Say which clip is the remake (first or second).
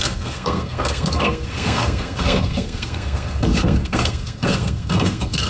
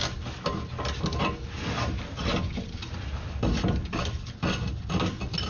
first